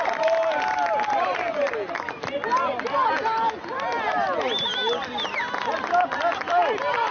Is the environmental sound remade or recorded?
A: recorded